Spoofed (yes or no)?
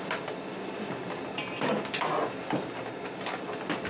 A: no